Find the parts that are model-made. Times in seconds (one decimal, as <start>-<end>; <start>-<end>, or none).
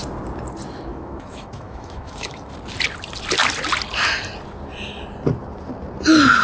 0.9-2.5